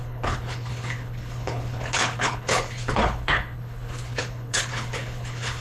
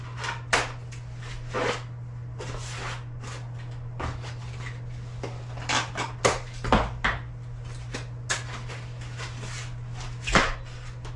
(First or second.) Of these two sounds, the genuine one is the second